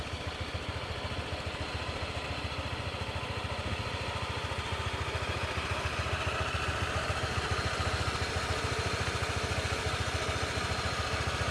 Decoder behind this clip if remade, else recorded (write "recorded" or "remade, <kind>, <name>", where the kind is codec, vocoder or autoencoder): recorded